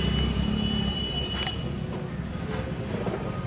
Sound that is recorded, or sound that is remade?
recorded